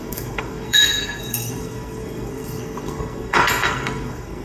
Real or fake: fake